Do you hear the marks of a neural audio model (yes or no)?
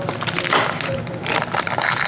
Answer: no